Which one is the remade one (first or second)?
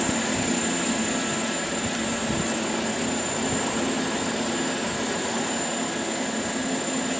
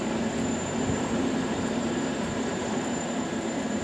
second